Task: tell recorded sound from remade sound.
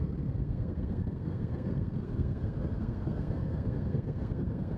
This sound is remade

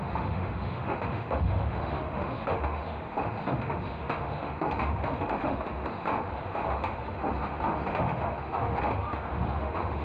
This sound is remade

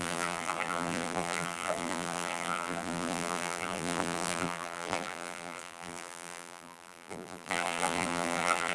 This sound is remade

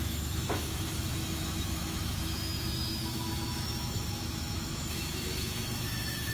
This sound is remade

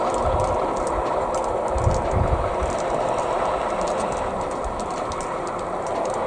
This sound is recorded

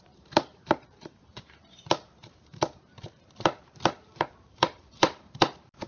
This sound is remade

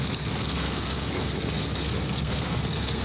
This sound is remade